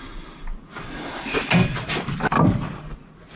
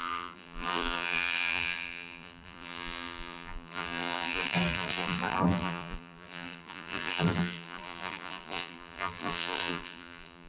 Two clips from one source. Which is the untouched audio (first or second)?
first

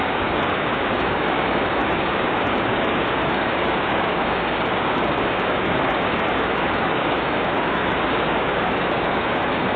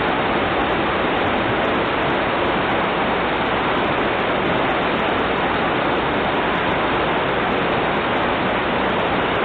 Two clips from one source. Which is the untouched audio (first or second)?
second